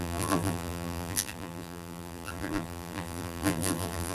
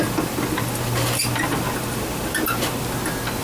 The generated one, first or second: first